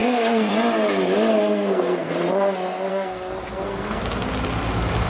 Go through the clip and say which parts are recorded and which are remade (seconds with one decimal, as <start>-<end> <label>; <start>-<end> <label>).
0.0-0.5 remade; 0.5-1.3 recorded; 1.3-2.1 remade; 2.1-2.9 recorded; 2.9-4.0 remade; 4.0-5.1 recorded